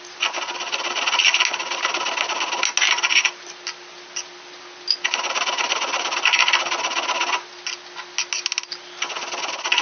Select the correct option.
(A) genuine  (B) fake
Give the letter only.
A